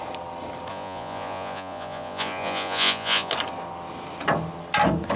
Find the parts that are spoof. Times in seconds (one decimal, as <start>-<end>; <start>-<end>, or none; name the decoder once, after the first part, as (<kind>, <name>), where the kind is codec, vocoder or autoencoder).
0.7-3.3 (vocoder, Vocos)